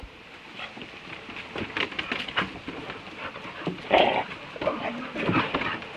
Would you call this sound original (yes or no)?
yes